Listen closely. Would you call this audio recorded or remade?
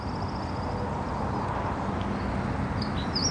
recorded